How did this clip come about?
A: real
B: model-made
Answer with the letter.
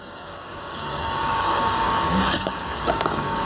B